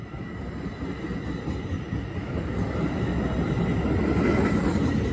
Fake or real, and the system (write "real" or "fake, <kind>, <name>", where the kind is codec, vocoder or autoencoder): real